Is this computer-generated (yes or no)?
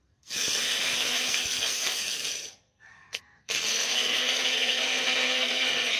yes